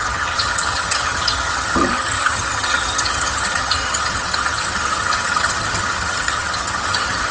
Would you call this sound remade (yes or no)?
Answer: yes